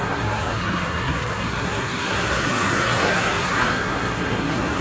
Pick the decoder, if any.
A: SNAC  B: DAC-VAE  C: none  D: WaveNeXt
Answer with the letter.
A